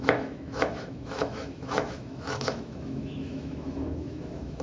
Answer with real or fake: fake